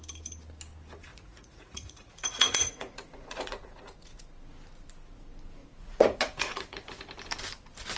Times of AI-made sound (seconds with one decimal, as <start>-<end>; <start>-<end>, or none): 1.1-4.2; 5.6-7.0